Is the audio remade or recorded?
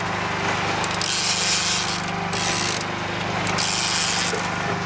recorded